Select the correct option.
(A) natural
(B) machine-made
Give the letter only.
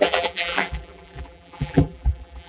B